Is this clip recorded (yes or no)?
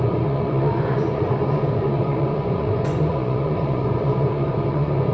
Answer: no